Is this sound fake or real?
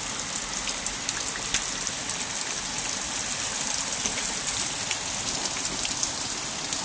real